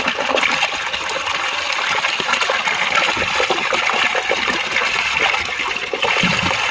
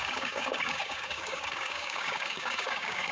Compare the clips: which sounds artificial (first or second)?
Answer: second